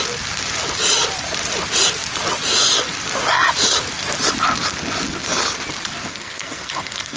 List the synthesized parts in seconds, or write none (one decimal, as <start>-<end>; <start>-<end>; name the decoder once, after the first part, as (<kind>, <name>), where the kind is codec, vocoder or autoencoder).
6.1-7.2 (codec, SNAC)